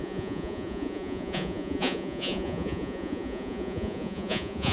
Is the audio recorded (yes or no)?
no